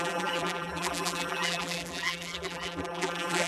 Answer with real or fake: fake